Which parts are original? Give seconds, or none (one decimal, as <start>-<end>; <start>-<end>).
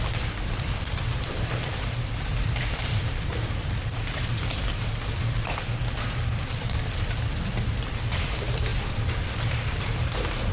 none